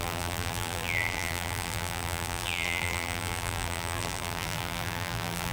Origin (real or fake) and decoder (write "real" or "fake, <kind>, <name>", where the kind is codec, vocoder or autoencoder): fake, vocoder, BigVGAN v2